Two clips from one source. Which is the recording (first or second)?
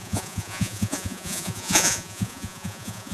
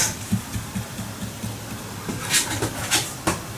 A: second